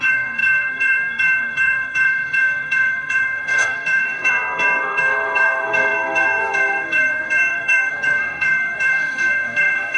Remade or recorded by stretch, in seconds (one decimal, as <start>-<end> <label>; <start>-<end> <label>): 0.0-10.0 remade